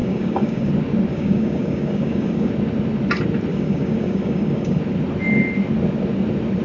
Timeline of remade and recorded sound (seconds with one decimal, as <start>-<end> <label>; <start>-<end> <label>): 0.0-0.7 remade; 0.7-1.1 recorded; 1.1-2.5 remade; 2.5-3.5 recorded; 3.5-4.8 remade; 4.8-6.6 recorded